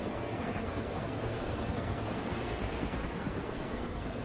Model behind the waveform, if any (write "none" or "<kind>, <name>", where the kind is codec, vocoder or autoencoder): codec, SNAC